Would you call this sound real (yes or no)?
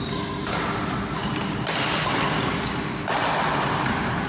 yes